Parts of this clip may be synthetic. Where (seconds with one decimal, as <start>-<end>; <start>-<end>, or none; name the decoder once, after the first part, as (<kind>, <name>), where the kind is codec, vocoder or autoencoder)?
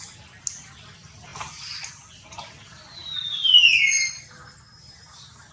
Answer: none